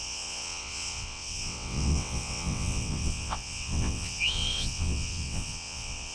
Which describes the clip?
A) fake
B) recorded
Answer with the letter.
A